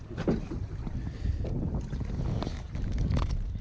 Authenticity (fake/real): real